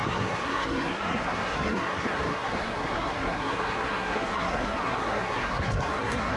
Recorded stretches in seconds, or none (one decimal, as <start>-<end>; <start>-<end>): none